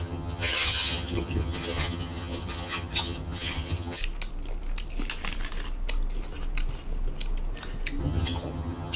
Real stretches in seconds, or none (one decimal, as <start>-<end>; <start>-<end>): 4.0-8.0